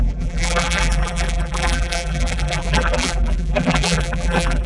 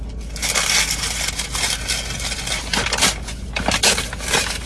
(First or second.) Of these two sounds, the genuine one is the second